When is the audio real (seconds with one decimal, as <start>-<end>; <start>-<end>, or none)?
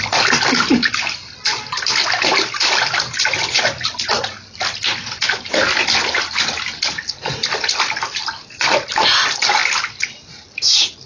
0.0-11.1